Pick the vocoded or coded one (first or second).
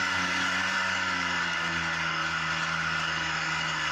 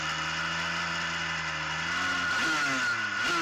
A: first